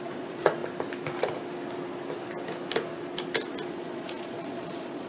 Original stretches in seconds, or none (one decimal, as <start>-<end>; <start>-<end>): 0.6-3.7